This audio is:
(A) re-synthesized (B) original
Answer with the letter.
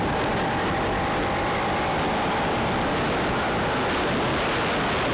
B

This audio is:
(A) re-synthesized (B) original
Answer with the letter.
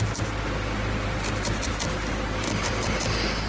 B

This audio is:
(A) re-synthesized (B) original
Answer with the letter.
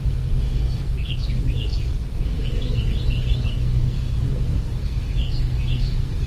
A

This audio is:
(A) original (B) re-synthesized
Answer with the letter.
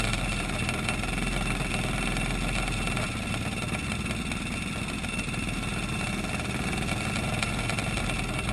A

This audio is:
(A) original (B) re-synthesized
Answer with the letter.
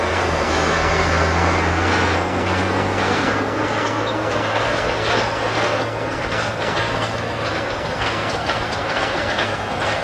B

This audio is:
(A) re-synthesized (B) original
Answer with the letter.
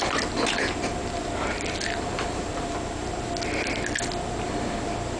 B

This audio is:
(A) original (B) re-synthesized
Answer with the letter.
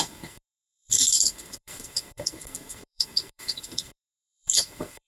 B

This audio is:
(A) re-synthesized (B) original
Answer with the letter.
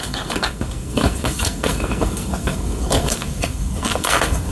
A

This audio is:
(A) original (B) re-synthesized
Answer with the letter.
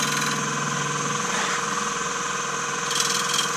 A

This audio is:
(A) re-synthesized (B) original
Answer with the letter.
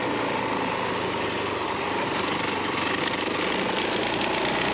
B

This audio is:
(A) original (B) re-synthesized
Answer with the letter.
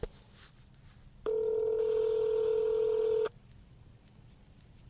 A